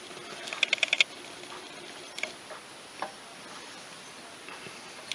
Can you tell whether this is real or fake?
real